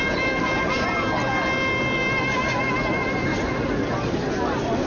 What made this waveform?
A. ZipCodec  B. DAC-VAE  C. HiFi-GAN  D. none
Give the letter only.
D